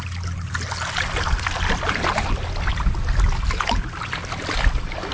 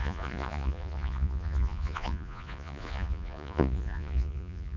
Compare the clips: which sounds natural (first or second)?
first